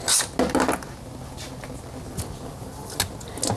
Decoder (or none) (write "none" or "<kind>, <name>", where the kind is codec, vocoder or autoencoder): none